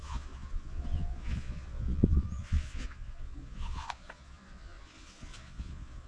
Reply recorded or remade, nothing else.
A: remade